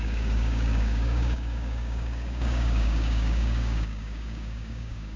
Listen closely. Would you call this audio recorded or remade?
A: remade